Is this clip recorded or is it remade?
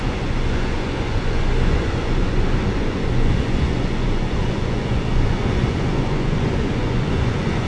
remade